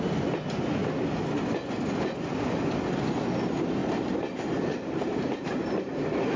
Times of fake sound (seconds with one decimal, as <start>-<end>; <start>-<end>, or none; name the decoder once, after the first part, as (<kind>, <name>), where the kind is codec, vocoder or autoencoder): 3.8-5.8 (vocoder, BigVGAN v2)